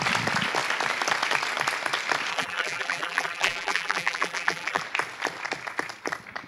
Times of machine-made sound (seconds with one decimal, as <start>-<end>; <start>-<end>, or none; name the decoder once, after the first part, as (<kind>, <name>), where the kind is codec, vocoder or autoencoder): 2.3-4.8 (vocoder, BigVGAN v2)